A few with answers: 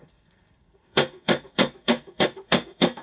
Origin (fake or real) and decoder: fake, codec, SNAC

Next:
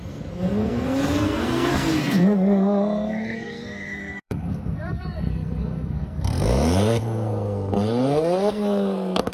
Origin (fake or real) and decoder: fake, codec, SNAC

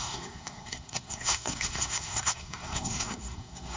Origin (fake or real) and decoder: fake, codec, SNAC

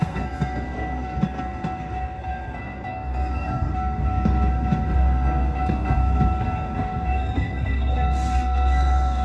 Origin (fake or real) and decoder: fake, codec, SNAC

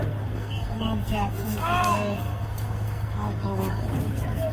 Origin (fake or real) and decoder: fake, codec, SNAC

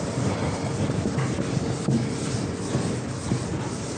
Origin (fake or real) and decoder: real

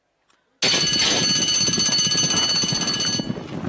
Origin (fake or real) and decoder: real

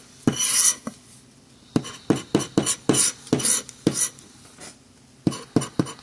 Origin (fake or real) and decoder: real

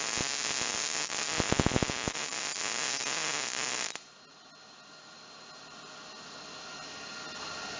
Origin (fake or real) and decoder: real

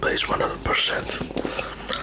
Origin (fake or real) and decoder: real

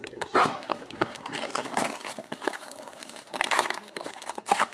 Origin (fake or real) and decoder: fake, codec, SNAC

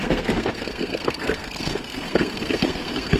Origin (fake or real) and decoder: fake, codec, SNAC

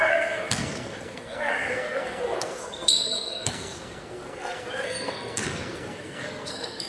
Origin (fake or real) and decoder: fake, codec, SNAC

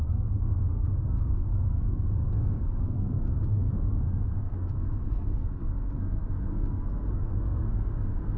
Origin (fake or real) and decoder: fake, codec, SNAC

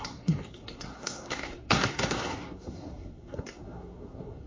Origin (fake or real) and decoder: fake, codec, SNAC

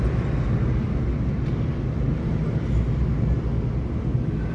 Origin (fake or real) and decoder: real